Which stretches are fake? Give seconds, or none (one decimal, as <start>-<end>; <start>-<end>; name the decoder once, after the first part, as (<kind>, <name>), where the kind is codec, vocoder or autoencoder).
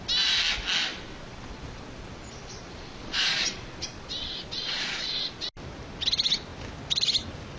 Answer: 0.9-5.5 (vocoder, Vocos)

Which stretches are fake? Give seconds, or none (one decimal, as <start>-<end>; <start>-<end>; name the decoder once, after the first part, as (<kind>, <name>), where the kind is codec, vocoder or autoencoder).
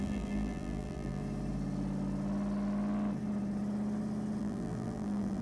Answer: 0.0-1.2 (vocoder, BigVGAN v2); 4.4-5.4